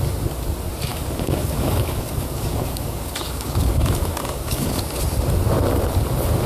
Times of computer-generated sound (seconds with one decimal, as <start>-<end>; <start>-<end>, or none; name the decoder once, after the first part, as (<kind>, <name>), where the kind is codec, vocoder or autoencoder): 0.9-4.8 (codec, DAC)